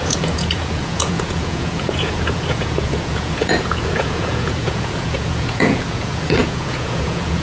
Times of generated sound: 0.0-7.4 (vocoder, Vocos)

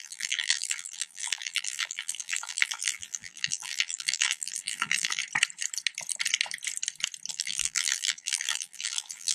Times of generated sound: 0.0-5.2 (vocoder, BigVGAN v2); 7.3-9.3